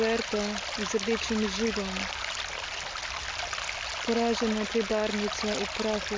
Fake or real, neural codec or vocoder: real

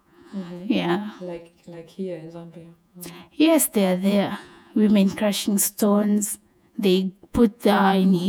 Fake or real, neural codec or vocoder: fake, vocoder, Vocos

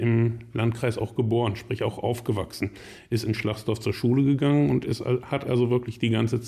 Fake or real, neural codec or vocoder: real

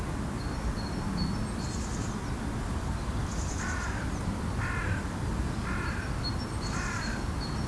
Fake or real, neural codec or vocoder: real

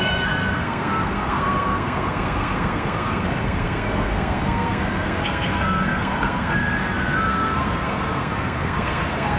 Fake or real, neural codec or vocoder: fake, codec, SNAC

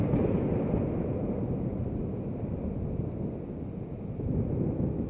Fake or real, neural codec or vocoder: real